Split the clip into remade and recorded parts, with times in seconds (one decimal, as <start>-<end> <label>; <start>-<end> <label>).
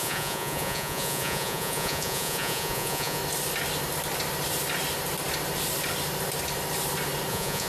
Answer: 0.0-3.2 remade; 3.2-7.3 recorded; 7.3-7.7 remade